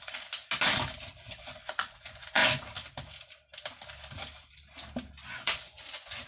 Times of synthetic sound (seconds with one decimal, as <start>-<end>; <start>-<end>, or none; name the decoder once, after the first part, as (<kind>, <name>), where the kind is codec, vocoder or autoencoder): 0.0-0.4 (vocoder, Vocos); 1.2-2.4; 5.3-6.3